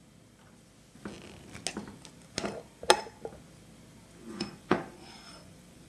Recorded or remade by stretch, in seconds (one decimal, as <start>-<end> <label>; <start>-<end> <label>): 0.0-4.2 recorded; 4.2-5.9 remade